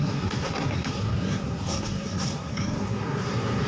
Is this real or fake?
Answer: fake